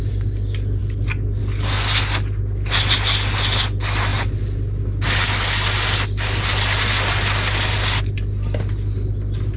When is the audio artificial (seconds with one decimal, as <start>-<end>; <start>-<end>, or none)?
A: none